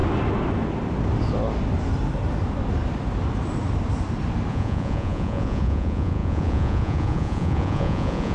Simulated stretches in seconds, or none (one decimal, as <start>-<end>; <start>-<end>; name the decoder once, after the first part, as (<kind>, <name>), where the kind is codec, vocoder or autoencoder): 4.5-8.3 (vocoder, Vocos)